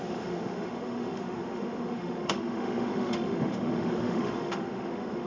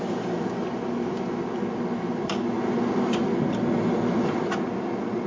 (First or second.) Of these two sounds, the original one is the second